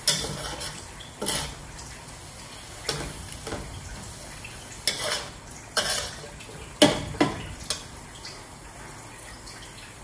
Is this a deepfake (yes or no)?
no